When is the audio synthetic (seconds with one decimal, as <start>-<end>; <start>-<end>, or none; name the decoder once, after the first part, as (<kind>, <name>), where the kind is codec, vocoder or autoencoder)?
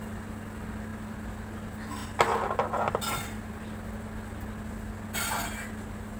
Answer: none